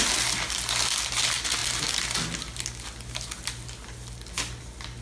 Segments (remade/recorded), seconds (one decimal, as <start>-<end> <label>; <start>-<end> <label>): 0.0-5.0 recorded